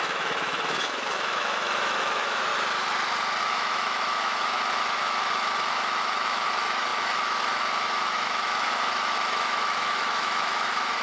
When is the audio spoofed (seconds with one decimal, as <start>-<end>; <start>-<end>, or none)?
0.0-2.5; 3.4-11.0